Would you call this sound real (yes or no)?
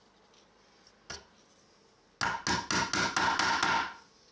yes